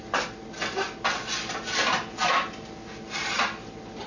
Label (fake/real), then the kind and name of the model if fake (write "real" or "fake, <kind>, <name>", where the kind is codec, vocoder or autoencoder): real